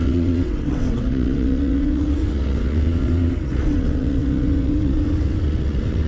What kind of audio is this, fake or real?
fake